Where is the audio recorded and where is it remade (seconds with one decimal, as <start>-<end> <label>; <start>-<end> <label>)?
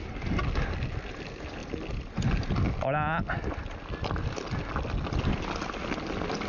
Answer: 0.0-6.5 recorded